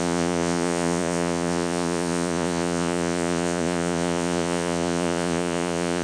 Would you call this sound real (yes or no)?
no